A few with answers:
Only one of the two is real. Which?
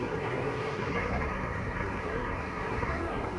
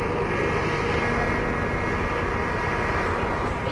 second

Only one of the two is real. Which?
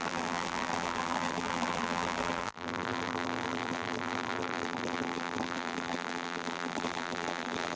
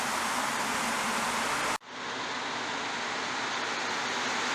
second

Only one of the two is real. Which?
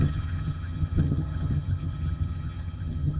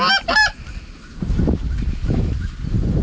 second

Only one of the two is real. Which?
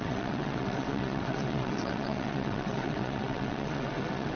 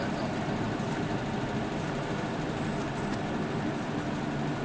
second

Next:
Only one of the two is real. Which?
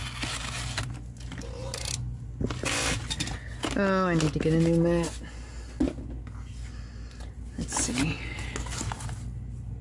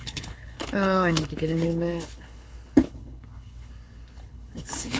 first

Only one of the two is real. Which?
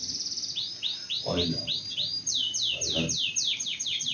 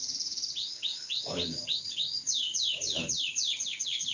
first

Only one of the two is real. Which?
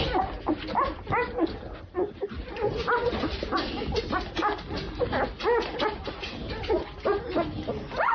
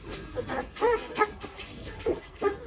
first